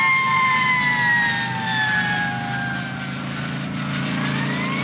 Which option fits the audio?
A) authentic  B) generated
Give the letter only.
A